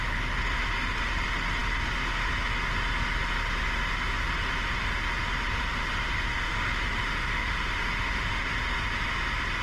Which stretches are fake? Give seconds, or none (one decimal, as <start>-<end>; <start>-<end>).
6.3-8.5